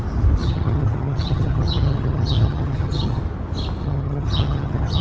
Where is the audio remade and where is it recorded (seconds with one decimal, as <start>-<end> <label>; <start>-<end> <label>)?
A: 0.0-0.4 recorded; 0.4-3.2 remade; 3.2-3.8 recorded; 3.8-5.0 remade